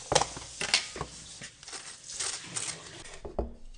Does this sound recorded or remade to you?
recorded